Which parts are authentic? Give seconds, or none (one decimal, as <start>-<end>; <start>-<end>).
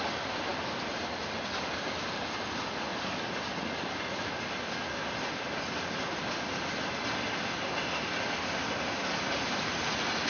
0.0-0.5; 1.8-2.9; 5.1-10.3